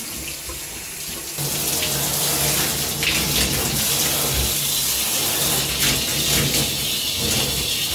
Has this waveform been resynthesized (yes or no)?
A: no